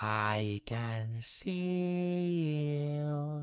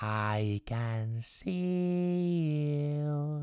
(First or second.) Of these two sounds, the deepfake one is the first